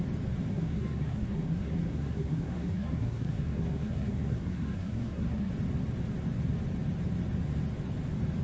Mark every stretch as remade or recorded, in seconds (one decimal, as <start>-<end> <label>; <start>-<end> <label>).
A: 0.0-0.5 recorded; 0.5-5.5 remade; 5.5-8.4 recorded